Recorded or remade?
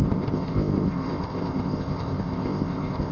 remade